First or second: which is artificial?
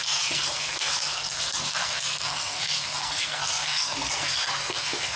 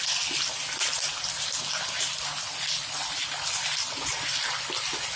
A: first